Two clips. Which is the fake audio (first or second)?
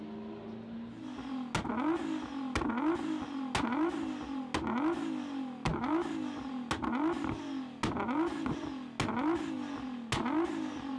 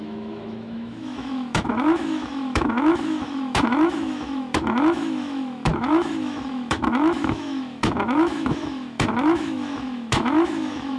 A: second